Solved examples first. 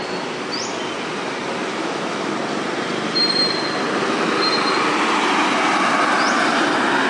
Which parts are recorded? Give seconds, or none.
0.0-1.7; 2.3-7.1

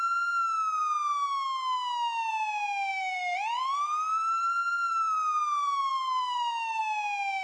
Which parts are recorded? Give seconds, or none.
0.0-2.9; 6.8-7.4

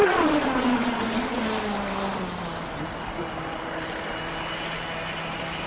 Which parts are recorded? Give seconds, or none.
1.4-5.7

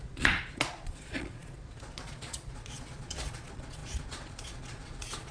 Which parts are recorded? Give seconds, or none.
none

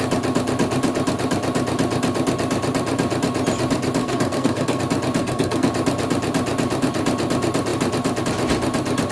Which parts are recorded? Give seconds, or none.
0.0-4.0; 4.8-5.2; 5.7-9.1

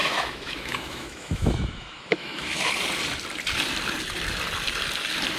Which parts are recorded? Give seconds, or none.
2.7-5.4